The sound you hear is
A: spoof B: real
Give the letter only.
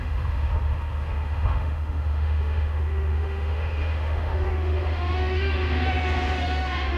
A